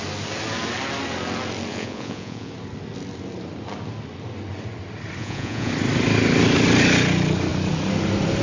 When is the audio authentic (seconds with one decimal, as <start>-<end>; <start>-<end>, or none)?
0.0-1.7; 2.5-5.2; 5.7-8.4